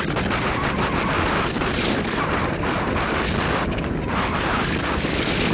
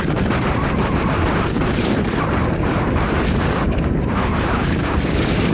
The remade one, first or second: second